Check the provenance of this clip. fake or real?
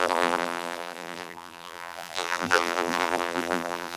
fake